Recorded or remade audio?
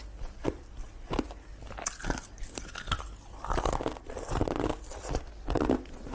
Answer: recorded